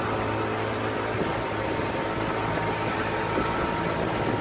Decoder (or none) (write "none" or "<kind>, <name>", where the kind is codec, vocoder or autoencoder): none